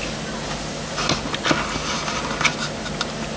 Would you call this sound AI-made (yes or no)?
no